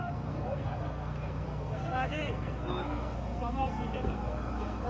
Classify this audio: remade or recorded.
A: remade